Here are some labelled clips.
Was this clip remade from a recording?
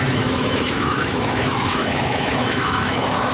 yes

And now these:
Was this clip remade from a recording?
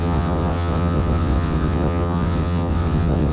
yes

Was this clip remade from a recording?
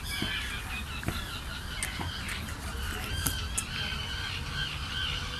no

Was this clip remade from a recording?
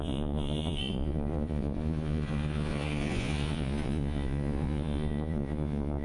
yes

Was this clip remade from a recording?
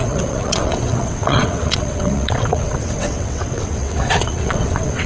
yes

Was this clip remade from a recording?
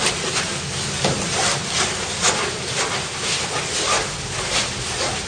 no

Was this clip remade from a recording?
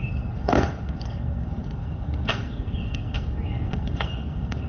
yes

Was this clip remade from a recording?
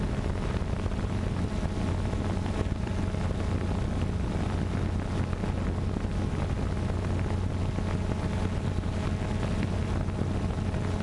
no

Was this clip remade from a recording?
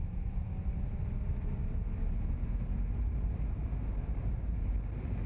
no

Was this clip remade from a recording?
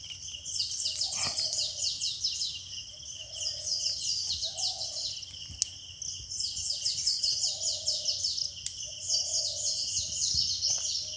no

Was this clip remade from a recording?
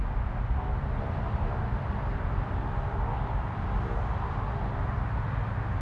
no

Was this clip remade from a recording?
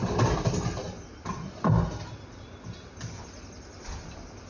no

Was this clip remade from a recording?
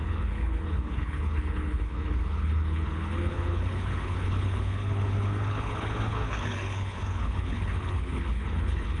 yes